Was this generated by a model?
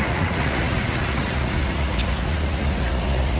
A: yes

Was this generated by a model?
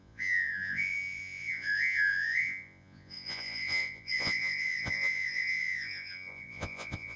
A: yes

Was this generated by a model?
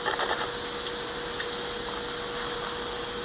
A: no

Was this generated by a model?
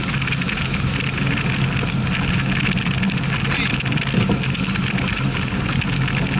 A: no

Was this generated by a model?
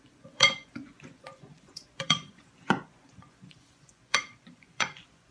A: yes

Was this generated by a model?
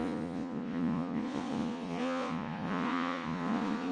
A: yes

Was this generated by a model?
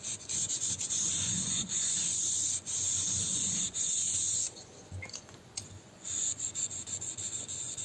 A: yes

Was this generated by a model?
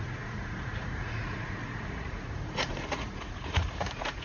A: yes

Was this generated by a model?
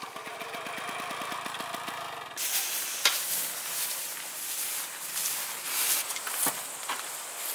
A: no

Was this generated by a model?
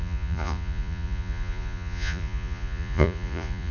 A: yes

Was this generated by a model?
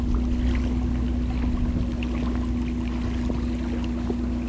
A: no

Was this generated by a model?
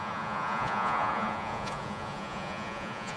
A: yes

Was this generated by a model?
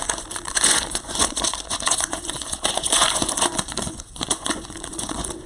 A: yes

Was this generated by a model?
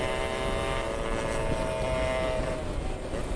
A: no